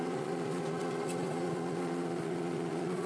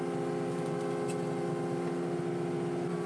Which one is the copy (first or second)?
first